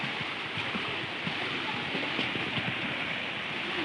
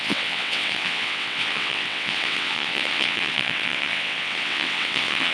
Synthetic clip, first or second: second